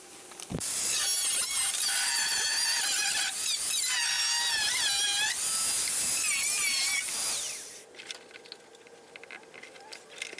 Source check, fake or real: real